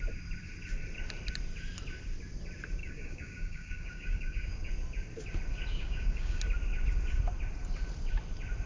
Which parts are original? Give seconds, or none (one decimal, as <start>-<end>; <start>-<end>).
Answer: 0.0-2.8; 4.7-5.7; 6.4-8.7